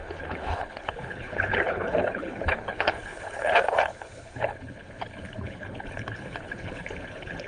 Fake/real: fake